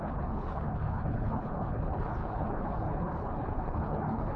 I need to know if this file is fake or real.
fake